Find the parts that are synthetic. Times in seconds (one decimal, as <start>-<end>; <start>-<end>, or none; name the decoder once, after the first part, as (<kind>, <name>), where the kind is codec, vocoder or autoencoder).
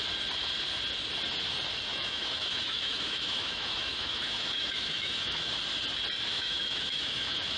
1.9-5.5 (autoencoder, DAC-VAE); 6.3-7.6